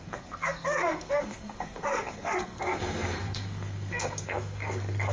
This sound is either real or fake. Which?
fake